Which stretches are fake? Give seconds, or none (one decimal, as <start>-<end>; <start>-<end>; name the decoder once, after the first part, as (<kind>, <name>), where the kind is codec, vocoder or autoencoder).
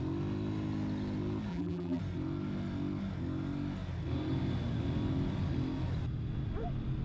1.5-2.0 (vocoder, BigVGAN v2)